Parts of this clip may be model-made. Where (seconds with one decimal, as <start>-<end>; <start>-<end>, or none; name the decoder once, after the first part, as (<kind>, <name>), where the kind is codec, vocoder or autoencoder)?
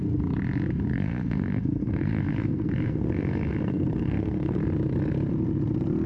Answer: 0.9-4.6 (codec, SNAC)